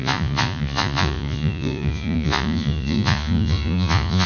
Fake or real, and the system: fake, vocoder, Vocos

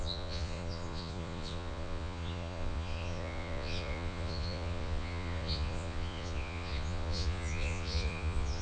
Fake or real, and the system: fake, vocoder, Vocos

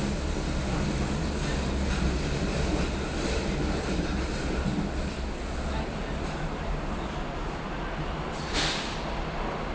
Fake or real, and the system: real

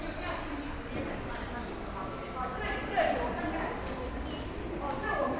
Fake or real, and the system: real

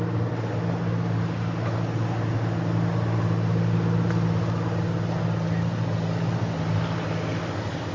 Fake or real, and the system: real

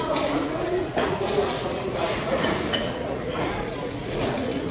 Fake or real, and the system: fake, vocoder, Vocos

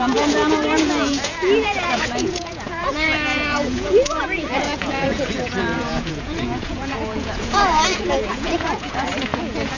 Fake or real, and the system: fake, vocoder, Vocos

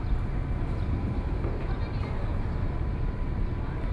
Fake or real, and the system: real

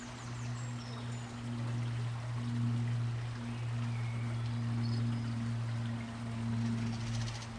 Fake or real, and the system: real